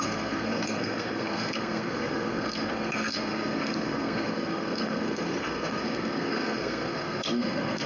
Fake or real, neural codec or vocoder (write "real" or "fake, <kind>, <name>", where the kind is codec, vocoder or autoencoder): fake, codec, SNAC